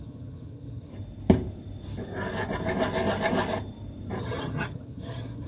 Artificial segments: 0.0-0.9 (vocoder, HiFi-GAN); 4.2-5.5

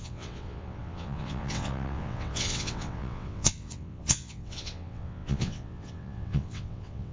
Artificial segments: 0.0-7.1 (vocoder, WaveNeXt)

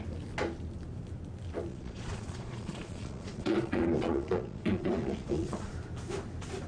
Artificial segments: 1.7-5.7 (vocoder, Vocos)